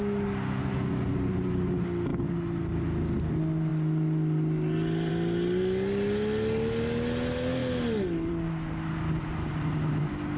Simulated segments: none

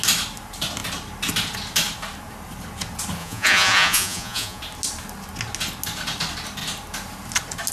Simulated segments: 3.2-4.6

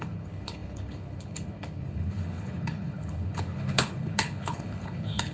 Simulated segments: 0.0-5.3

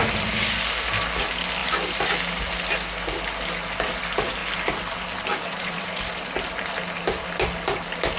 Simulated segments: 5.4-6.0

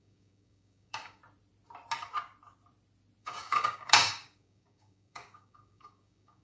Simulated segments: 0.0-1.2; 3.2-6.4

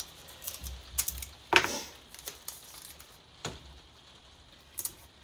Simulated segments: 0.0-0.6; 3.4-5.2

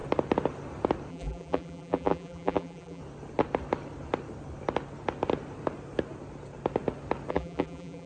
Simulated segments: 1.1-3.0; 7.3-8.1